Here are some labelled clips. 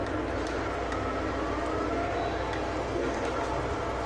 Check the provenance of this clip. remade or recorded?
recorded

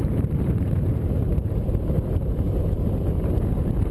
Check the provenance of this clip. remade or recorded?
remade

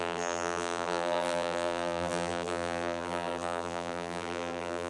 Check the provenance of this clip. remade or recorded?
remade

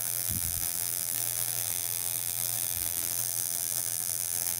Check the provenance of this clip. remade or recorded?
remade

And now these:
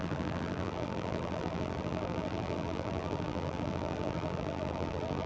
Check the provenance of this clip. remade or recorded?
remade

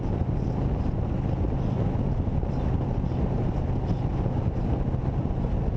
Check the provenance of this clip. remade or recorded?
recorded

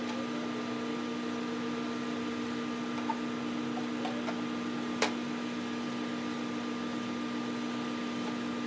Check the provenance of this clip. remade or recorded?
recorded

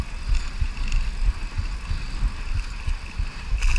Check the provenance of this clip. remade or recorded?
recorded